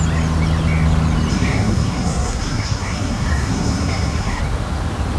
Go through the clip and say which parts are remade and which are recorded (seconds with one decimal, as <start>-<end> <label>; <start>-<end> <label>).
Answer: 0.0-1.3 recorded; 1.3-4.4 remade; 4.4-5.2 recorded

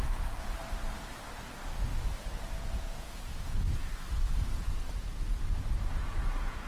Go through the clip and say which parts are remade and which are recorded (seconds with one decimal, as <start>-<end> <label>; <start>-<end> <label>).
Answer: 0.0-0.6 remade; 0.6-2.2 recorded; 2.2-3.8 remade; 3.8-5.1 recorded; 5.1-6.7 remade

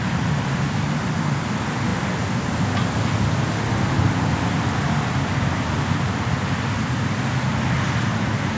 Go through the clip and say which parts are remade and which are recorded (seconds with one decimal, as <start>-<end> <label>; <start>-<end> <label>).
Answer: 0.0-8.6 recorded